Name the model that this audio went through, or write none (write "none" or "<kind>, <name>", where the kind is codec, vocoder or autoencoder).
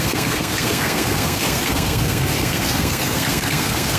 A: codec, SNAC